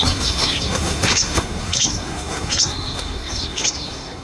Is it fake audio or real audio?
fake